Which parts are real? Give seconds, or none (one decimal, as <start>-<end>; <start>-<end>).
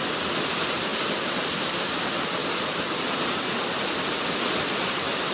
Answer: 0.0-0.9; 2.0-2.4; 3.4-5.3